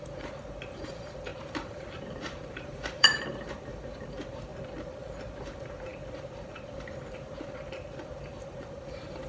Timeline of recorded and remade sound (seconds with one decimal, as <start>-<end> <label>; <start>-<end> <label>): 0.0-4.5 remade; 4.5-5.4 recorded; 5.4-9.3 remade